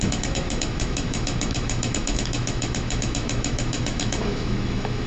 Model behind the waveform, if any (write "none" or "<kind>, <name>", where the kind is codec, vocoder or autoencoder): autoencoder, DAC-VAE